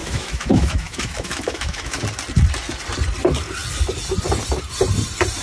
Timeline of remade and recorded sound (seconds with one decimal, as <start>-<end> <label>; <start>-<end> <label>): 0.0-2.0 remade; 2.0-5.4 recorded